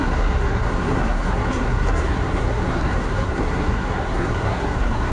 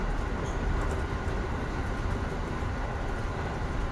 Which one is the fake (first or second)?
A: first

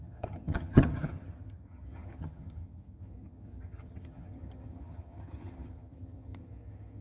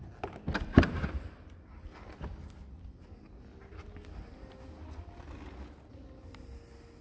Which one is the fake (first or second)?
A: first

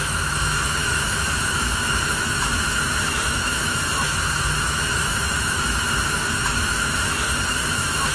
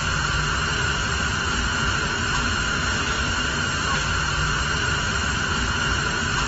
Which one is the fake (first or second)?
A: first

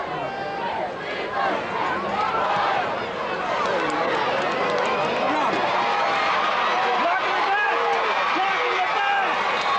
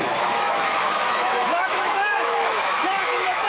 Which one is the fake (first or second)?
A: second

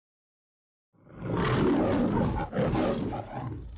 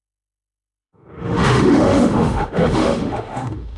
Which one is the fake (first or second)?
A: second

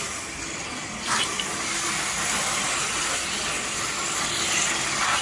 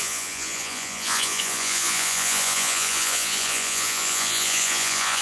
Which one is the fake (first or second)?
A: second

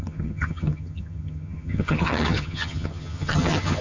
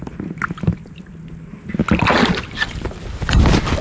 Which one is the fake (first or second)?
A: first